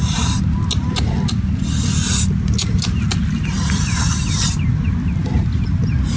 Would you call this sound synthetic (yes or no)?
no